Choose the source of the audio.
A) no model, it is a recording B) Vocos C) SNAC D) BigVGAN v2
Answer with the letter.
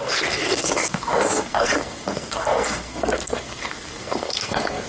C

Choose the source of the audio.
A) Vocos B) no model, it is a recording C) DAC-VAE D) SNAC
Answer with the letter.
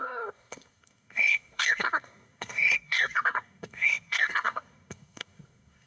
D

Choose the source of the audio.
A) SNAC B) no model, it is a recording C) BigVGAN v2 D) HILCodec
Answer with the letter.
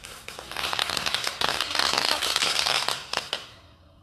A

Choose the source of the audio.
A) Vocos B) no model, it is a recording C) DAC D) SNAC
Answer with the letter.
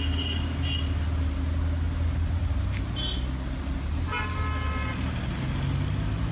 B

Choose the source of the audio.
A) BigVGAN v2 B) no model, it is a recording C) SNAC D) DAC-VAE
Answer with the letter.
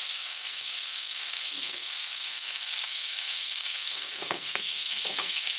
C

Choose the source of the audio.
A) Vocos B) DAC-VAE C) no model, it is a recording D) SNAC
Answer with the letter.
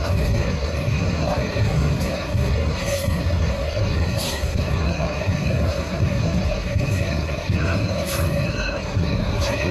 D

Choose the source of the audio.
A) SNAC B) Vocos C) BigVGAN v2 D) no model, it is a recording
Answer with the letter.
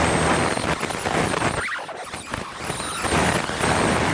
D